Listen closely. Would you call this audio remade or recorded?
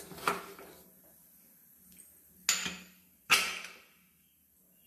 recorded